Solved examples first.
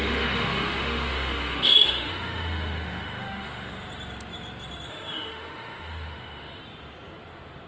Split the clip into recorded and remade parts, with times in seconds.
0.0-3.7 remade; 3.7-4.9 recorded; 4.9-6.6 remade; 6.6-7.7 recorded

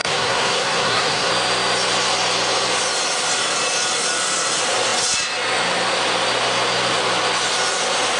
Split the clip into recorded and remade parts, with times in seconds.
0.0-1.3 remade; 1.3-8.2 recorded

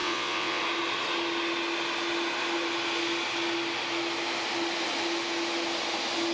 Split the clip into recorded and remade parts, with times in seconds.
0.0-0.6 remade; 0.6-6.3 recorded

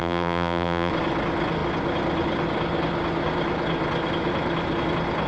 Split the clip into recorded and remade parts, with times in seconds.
0.0-0.9 remade; 0.9-5.3 recorded

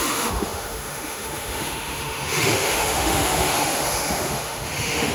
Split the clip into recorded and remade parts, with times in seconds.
0.0-5.1 remade

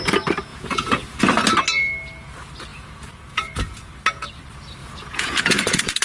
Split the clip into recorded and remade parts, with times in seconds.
0.0-0.5 recorded; 0.5-1.2 remade; 1.2-2.7 recorded; 2.7-3.9 remade; 3.9-4.8 recorded; 4.8-6.0 remade

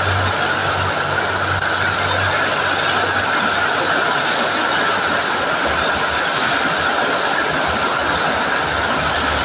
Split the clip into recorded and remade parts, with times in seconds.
0.0-9.4 recorded

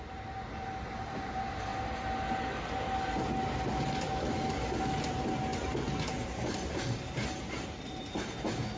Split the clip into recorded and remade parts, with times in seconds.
0.0-1.7 remade; 1.7-5.0 recorded; 5.0-5.5 remade; 5.5-8.8 recorded